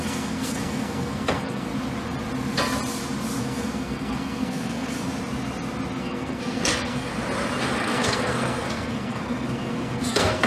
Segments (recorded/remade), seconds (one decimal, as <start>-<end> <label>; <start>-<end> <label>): 0.0-1.7 remade; 1.7-3.4 recorded; 3.4-5.1 remade; 5.1-6.0 recorded; 6.0-7.1 remade; 7.1-7.8 recorded; 7.8-10.5 remade